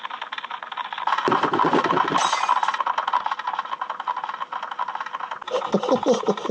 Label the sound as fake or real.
real